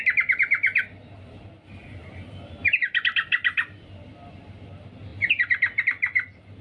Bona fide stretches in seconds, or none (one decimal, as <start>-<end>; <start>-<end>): 0.0-6.6